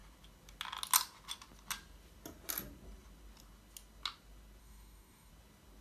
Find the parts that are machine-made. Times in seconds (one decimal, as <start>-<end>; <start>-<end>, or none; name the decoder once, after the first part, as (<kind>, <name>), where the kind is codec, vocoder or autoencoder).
4.6-5.3 (codec, DAC)